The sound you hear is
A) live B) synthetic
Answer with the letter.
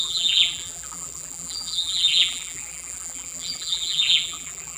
B